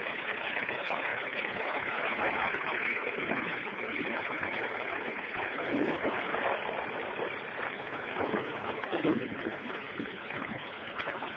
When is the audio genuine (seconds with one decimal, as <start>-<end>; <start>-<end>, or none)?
6.3-7.7